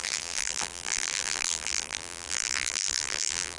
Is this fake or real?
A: fake